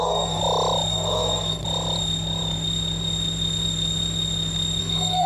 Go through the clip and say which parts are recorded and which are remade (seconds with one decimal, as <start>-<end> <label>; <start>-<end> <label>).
0.0-0.4 remade; 0.4-0.9 recorded; 0.9-1.6 remade; 1.6-4.8 recorded; 4.8-5.3 remade